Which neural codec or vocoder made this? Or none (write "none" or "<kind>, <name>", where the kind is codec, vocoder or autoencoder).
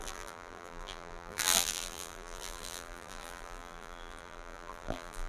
vocoder, BigVGAN v2